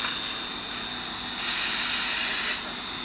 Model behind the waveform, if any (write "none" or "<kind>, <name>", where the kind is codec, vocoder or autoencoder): none